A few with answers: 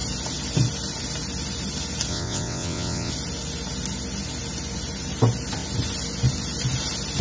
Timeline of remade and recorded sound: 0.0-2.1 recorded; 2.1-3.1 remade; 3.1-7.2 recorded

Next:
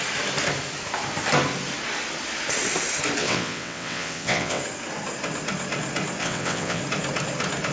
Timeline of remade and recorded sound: 0.0-3.2 recorded; 3.2-4.6 remade; 4.6-6.2 recorded; 6.2-6.8 remade; 6.8-7.7 recorded